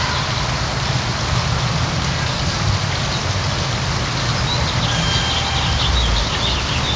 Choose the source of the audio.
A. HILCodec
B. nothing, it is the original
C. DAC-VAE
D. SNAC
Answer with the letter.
B